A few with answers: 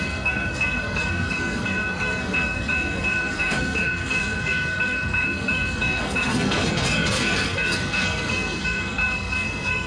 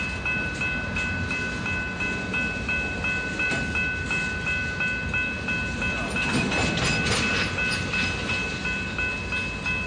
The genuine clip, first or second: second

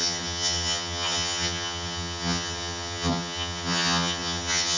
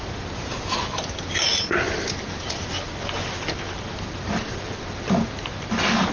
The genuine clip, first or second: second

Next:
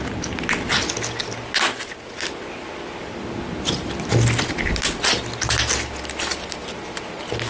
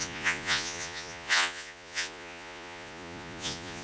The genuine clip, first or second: first